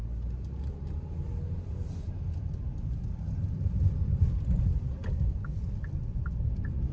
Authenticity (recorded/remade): recorded